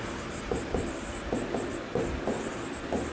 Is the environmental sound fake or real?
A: real